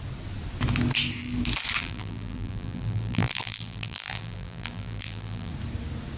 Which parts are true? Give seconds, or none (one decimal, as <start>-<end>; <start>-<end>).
0.0-1.8; 5.5-6.2